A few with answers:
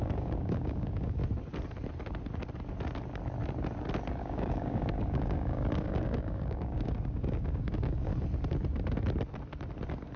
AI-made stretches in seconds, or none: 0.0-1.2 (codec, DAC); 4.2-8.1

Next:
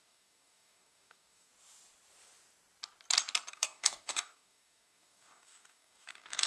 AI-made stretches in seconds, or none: 0.0-1.5 (codec, DAC); 3.5-6.5

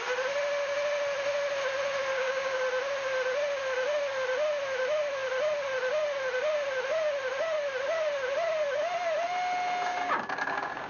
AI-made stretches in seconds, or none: 2.1-2.6 (codec, DAC); 9.9-10.9

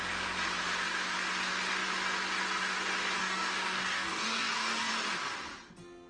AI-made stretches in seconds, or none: 3.2-4.9 (codec, DAC)

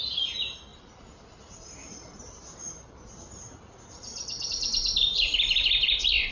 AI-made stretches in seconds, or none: none

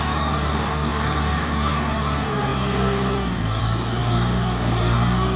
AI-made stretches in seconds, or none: 0.0-5.4 (codec, DAC)

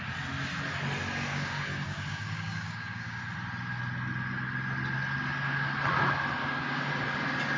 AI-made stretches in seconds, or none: 1.3-3.2 (codec, DAC); 6.4-6.9